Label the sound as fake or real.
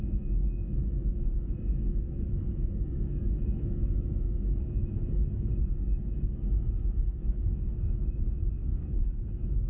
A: fake